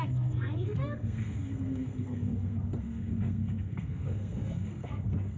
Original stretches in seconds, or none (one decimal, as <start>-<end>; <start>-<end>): none